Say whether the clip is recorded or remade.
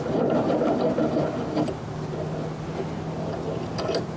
recorded